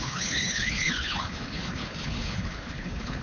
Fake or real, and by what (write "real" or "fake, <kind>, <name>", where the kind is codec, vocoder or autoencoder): fake, codec, HILCodec